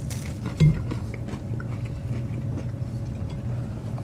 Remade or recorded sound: recorded